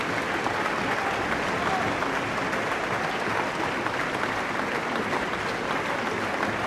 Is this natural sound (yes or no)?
yes